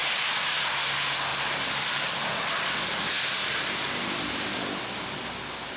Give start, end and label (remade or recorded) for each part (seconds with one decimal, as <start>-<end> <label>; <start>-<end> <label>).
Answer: 0.0-1.3 recorded; 1.3-4.8 remade; 4.8-5.8 recorded